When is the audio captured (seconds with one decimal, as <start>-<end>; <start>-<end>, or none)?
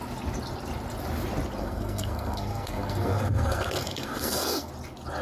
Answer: 0.0-1.6; 4.7-5.2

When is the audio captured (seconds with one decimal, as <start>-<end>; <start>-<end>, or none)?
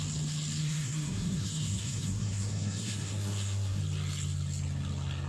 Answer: 0.0-0.6; 3.8-5.3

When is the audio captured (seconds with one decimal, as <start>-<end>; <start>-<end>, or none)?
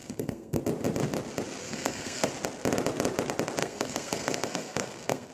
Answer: 0.6-1.6; 2.3-3.6